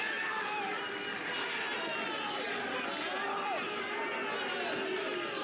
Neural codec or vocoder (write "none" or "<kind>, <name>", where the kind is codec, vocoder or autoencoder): none